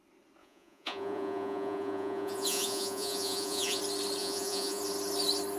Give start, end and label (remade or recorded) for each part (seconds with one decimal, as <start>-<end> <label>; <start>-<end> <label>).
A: 0.0-0.4 recorded; 0.4-3.8 remade; 3.8-4.2 recorded; 4.2-4.8 remade; 4.8-5.6 recorded